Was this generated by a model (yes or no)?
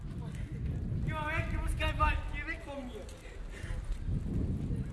no